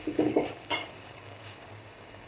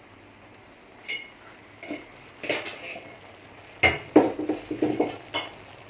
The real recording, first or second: second